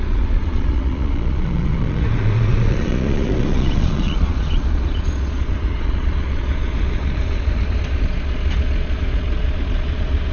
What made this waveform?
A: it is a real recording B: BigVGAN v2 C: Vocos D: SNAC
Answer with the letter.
C